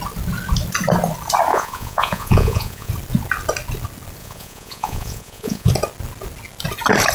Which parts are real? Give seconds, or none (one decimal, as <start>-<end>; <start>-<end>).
0.0-1.5; 2.9-4.2; 5.7-7.1